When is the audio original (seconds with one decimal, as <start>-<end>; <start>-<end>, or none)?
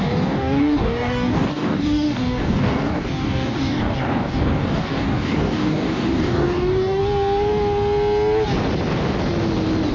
7.0-9.9